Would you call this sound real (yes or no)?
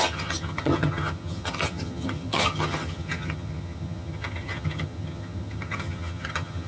no